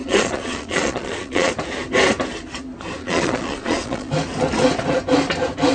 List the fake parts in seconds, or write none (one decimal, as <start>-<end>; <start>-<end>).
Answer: 0.0-1.5; 3.0-4.1